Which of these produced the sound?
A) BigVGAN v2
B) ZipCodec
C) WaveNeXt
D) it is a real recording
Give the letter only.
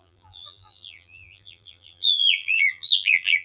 A